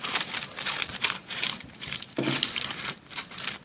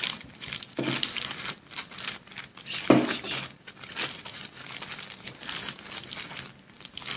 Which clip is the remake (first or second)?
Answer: first